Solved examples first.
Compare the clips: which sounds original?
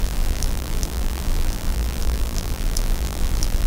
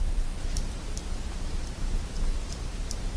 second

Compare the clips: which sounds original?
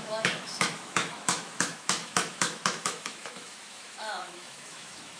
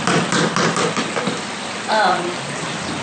second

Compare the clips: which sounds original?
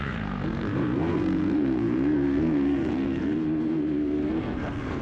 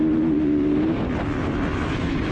second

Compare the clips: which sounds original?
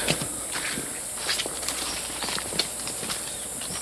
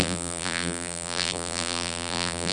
first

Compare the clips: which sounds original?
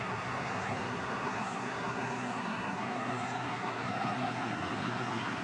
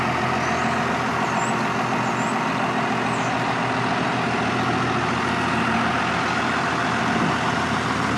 second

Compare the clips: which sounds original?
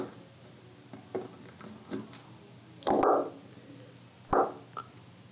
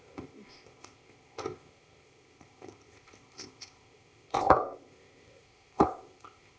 first